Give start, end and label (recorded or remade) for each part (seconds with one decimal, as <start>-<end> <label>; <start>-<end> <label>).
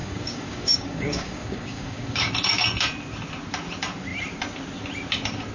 0.0-2.3 remade; 2.3-5.5 recorded